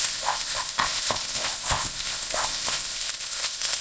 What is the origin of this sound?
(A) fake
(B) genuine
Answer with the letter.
A